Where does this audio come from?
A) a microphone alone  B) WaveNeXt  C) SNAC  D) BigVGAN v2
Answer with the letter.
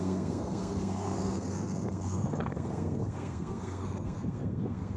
C